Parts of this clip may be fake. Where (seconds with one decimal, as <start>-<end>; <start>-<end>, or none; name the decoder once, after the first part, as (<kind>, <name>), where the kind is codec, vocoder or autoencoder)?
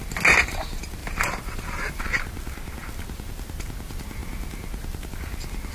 1.0-2.0 (vocoder, BigVGAN v2)